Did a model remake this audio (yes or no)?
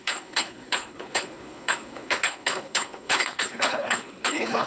yes